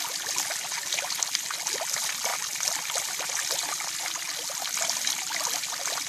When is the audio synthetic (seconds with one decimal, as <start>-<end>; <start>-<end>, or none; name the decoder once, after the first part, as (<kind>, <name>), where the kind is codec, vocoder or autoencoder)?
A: none